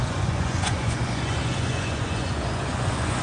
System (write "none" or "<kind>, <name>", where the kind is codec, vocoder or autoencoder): vocoder, Vocos